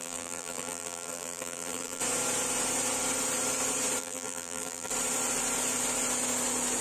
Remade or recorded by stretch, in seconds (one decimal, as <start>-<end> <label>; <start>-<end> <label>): 0.0-2.0 remade; 2.0-4.0 recorded; 4.0-4.9 remade; 4.9-6.8 recorded